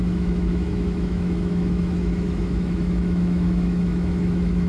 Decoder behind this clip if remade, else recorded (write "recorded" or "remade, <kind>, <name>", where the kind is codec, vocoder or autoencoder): remade, autoencoder, DAC-VAE